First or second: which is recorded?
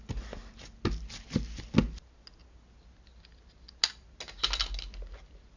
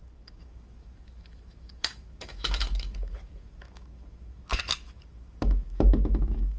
first